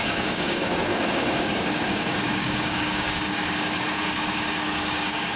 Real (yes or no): no